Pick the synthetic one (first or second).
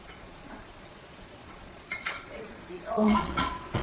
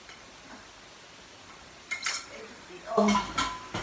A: first